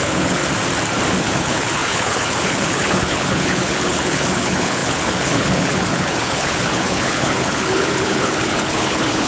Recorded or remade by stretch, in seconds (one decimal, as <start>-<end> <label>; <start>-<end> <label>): 0.0-0.4 remade; 0.4-1.2 recorded; 1.2-9.3 remade